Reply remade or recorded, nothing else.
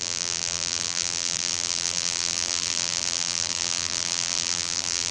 remade